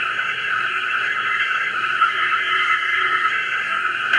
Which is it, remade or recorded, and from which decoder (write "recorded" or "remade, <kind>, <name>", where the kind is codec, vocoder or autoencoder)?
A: remade, codec, SNAC